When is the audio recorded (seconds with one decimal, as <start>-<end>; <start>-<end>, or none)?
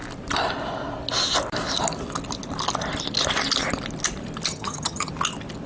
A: 0.0-4.5; 5.1-5.7